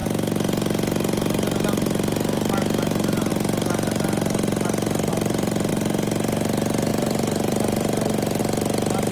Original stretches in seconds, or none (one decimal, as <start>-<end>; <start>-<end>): 0.0-5.1; 5.7-6.9; 8.4-9.1